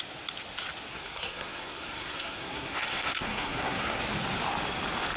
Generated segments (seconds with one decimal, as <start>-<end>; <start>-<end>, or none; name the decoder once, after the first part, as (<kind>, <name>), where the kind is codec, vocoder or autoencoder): 0.9-4.0 (codec, SNAC)